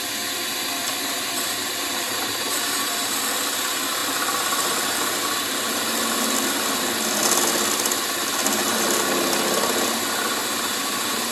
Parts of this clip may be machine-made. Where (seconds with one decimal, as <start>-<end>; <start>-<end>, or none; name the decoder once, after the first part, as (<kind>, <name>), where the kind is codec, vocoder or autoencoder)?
1.1-3.2 (vocoder, BigVGAN v2); 10.4-11.3